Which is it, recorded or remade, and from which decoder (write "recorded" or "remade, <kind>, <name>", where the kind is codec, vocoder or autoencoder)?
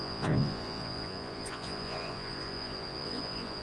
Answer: remade, vocoder, Vocos